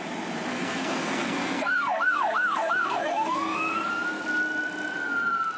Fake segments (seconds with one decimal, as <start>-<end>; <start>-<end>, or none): 0.5-3.9